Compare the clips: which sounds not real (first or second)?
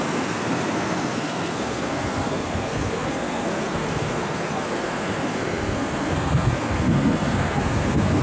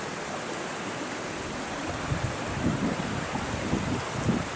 first